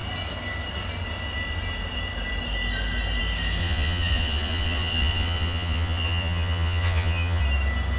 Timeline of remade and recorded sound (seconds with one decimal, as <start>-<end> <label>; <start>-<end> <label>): 0.0-3.6 recorded; 3.6-7.4 remade; 7.4-8.0 recorded

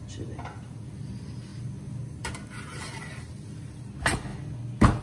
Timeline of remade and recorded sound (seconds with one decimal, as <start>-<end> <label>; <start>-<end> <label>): 0.0-5.0 recorded

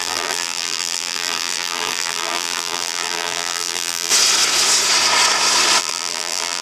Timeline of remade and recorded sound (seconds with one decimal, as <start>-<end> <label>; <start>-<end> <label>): 0.0-4.1 remade; 4.1-5.8 recorded; 5.8-6.6 remade

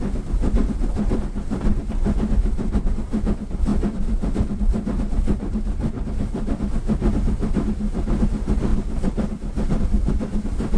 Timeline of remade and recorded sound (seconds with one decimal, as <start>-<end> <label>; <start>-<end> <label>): 0.0-3.7 recorded; 3.7-4.6 remade; 4.6-8.7 recorded; 8.7-9.8 remade; 9.8-10.8 recorded